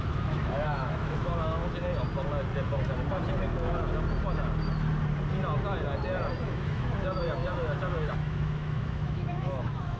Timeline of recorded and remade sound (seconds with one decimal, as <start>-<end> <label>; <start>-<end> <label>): 0.0-1.6 remade; 1.6-3.4 recorded; 3.4-3.8 remade; 3.8-6.4 recorded; 6.4-10.0 remade

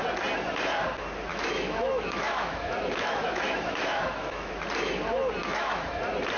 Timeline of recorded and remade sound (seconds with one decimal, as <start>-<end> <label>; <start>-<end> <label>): 0.0-1.3 recorded; 1.3-4.5 remade; 4.5-5.4 recorded; 5.4-5.9 remade; 5.9-6.4 recorded

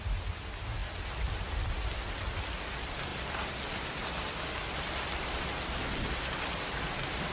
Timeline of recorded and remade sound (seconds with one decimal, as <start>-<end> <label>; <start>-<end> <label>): 0.0-7.3 recorded

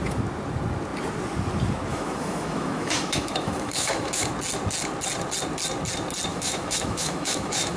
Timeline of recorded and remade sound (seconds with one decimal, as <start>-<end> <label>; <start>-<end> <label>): 0.0-1.9 recorded; 1.9-4.3 remade; 4.3-6.3 recorded; 6.3-7.8 remade